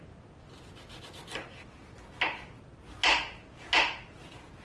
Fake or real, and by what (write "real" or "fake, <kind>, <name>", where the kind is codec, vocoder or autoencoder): real